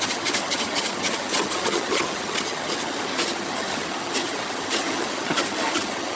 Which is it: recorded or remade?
remade